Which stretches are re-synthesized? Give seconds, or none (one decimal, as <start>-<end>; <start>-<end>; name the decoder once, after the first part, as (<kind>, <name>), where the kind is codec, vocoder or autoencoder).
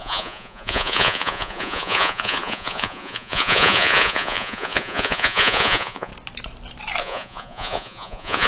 0.0-6.1 (vocoder, Vocos); 7.0-8.5